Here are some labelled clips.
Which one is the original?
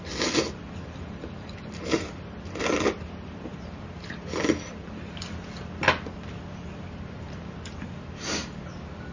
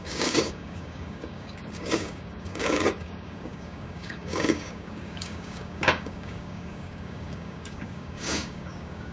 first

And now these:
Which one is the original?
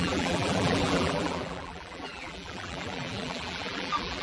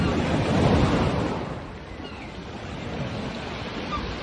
second